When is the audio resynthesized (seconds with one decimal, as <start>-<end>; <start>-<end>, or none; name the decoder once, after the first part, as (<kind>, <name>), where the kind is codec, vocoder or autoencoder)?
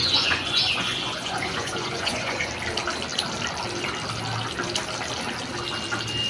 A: 0.0-2.5 (vocoder, Vocos)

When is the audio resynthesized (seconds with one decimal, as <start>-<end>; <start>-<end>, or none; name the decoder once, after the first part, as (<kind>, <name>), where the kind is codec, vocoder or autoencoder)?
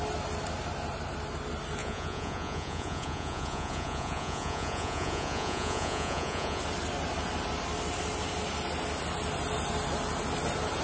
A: 1.8-6.6 (vocoder, Vocos)